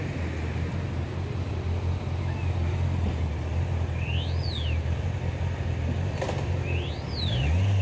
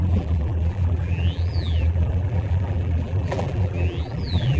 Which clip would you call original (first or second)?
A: first